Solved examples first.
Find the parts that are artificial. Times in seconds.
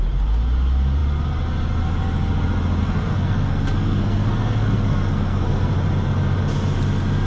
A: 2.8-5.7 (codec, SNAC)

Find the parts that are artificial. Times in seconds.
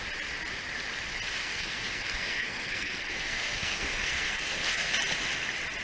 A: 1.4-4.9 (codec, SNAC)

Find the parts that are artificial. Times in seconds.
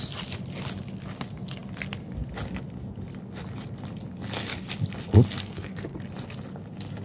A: 5.4-6.0 (codec, SNAC)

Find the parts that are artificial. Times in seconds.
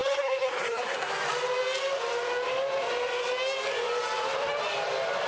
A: 0.0-1.1 (codec, SNAC)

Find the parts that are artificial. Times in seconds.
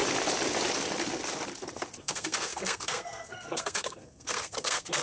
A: 2.0-5.0 (codec, SNAC)